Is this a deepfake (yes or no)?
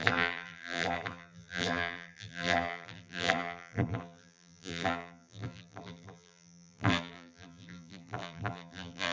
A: yes